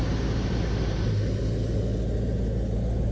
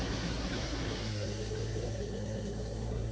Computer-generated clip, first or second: second